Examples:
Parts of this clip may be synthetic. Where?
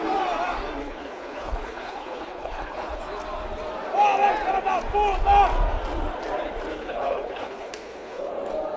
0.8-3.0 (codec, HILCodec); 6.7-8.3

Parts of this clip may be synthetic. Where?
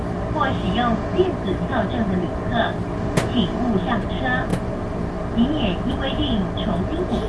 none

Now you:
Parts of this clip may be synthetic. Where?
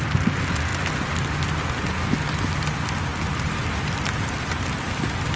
none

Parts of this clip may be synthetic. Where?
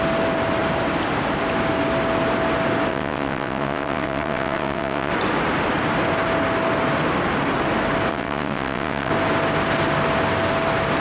2.9-5.1 (vocoder, WaveNeXt); 8.1-9.1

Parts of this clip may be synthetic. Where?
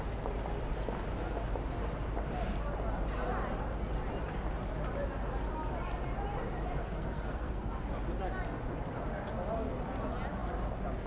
6.8-7.7 (codec, SNAC)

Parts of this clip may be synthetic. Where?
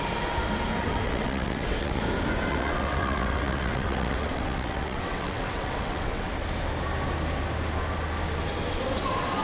0.8-2.0 (vocoder, WaveNeXt); 2.5-6.3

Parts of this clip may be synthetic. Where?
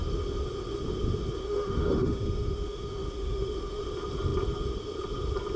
1.4-3.8 (autoencoder, DAC-VAE)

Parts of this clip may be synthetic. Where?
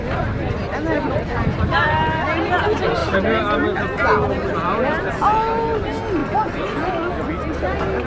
none